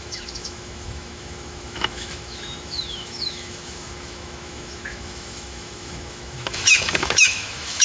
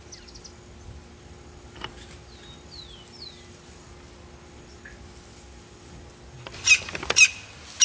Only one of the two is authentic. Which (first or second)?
second